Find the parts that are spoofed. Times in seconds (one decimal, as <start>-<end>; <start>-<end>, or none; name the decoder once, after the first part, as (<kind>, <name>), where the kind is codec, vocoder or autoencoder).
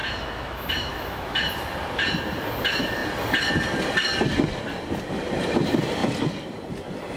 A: 0.0-1.5 (autoencoder, DAC-VAE)